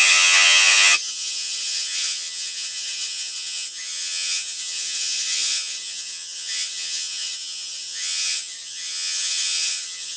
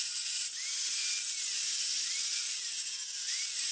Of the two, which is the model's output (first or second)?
first